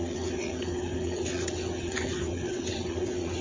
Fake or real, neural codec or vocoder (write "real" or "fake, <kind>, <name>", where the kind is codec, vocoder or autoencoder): fake, vocoder, WaveNeXt